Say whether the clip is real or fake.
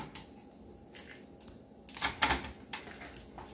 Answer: real